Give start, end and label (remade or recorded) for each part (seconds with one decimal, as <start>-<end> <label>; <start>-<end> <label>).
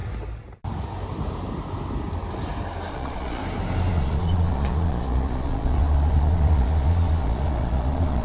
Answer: 0.0-2.9 recorded; 2.9-3.4 remade; 3.4-3.9 recorded; 3.9-8.2 remade